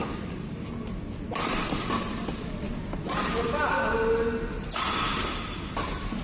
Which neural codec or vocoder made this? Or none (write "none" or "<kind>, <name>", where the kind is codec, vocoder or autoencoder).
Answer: none